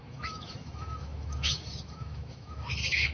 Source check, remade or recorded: remade